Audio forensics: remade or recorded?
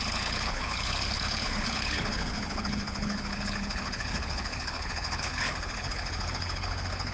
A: remade